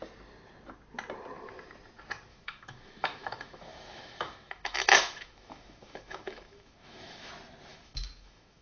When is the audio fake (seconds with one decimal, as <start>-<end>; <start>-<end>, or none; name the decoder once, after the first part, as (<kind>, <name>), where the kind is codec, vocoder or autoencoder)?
2.3-7.3 (autoencoder, DAC-VAE); 7.7-8.6